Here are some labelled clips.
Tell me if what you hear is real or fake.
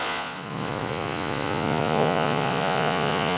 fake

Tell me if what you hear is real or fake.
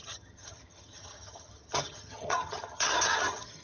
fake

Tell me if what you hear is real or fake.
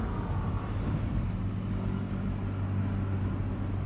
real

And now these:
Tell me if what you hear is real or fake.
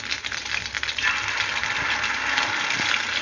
real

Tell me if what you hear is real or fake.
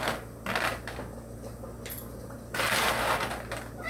real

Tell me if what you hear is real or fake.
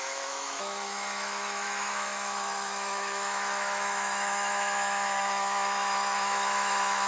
fake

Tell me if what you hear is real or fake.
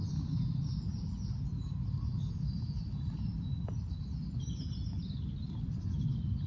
real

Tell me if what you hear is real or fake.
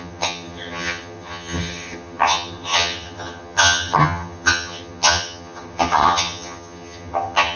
fake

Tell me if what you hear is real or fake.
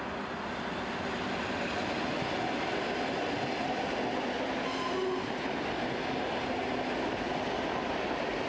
real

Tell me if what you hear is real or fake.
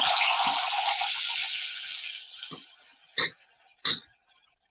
real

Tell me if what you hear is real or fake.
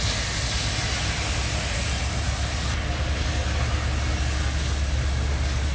real